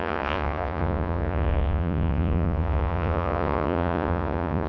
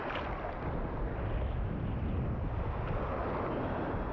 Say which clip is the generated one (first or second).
first